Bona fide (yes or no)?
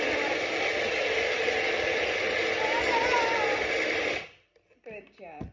yes